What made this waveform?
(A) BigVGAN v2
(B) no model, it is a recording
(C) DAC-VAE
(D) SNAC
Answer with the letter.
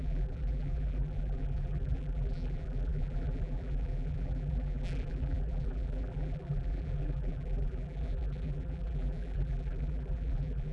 A